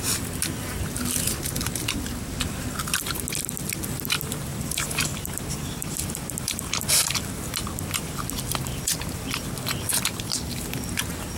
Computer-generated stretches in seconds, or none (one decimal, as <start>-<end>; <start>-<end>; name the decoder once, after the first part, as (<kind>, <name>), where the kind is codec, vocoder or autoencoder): 4.5-7.5 (vocoder, BigVGAN v2)